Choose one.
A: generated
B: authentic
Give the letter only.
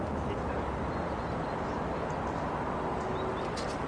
B